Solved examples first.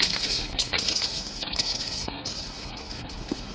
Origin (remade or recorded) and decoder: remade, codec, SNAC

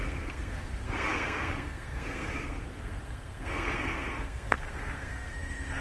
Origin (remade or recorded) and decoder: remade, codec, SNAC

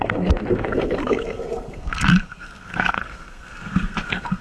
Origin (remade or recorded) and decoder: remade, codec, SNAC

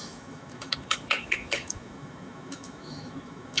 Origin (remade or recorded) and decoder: remade, autoencoder, DAC-VAE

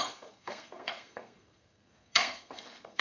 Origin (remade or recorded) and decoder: remade, codec, SNAC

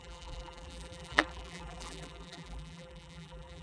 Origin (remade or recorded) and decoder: remade, vocoder, BigVGAN v2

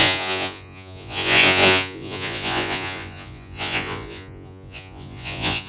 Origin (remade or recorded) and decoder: remade, vocoder, Vocos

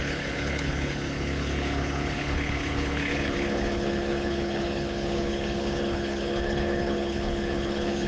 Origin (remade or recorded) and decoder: remade, codec, HILCodec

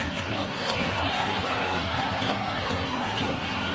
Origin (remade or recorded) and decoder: remade, codec, SNAC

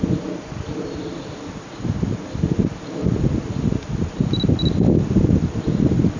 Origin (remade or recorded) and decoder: recorded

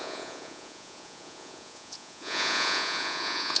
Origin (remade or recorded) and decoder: remade, vocoder, Vocos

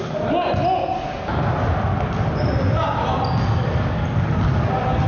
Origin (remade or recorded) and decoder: recorded